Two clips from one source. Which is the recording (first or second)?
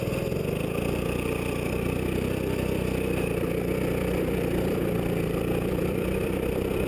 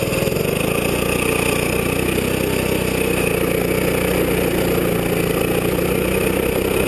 second